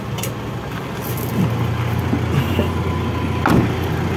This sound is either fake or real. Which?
real